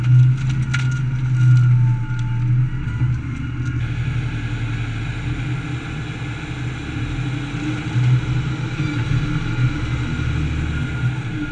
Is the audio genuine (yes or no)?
yes